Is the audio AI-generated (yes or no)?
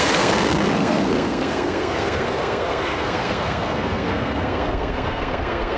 yes